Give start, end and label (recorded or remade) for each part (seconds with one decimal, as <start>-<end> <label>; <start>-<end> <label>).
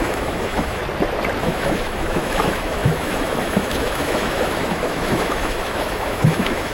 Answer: 0.0-0.8 remade; 0.8-1.4 recorded; 1.4-6.7 remade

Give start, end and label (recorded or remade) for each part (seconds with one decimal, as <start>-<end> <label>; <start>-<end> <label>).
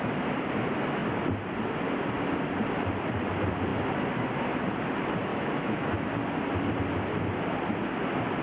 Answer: 0.0-5.3 recorded; 5.3-6.1 remade; 6.1-8.4 recorded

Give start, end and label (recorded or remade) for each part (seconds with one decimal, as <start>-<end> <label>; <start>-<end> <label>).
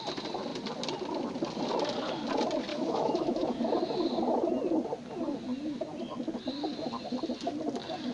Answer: 0.0-2.7 recorded; 2.7-3.6 remade; 3.6-8.1 recorded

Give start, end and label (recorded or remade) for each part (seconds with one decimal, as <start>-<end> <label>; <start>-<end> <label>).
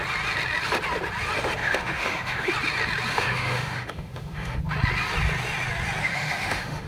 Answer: 0.0-1.6 recorded; 1.6-2.5 remade; 2.5-3.1 recorded; 3.1-4.6 remade; 4.6-6.0 recorded; 6.0-6.9 remade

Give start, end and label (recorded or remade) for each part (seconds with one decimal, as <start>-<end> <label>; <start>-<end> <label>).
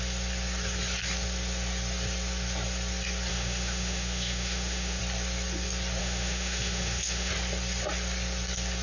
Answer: 0.0-3.3 recorded; 3.3-5.0 remade; 5.0-6.0 recorded; 6.0-7.3 remade; 7.3-8.8 recorded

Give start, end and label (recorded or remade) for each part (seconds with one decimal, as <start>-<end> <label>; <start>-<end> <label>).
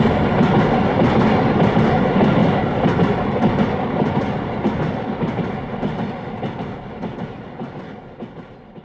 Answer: 0.0-8.8 recorded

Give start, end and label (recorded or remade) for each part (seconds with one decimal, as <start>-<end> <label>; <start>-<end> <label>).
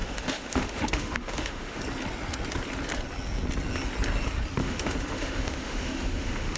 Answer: 0.0-1.8 remade; 1.8-4.6 recorded; 4.6-6.6 remade